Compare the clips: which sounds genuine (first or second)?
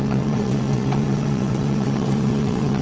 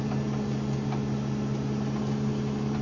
second